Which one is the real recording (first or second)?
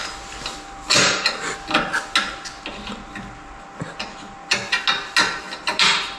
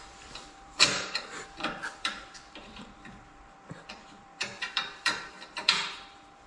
first